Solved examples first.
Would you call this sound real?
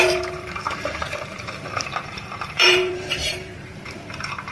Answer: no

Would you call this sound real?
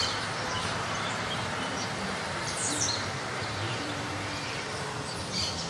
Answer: no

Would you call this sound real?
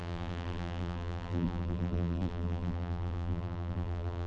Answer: no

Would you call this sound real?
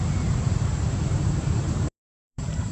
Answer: no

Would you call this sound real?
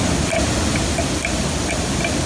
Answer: yes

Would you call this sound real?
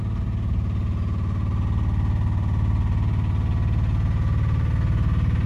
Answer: yes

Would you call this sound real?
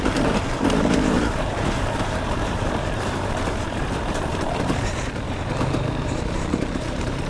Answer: no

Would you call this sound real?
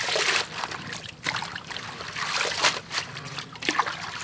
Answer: no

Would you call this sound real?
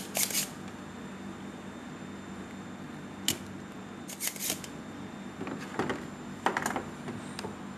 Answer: yes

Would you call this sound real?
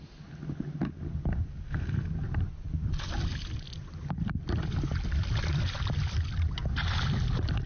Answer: yes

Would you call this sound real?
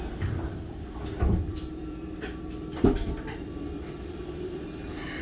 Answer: no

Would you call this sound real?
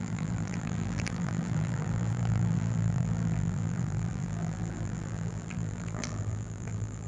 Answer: no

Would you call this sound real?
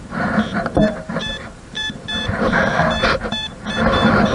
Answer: no